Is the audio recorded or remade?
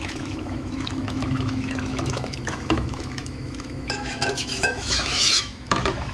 remade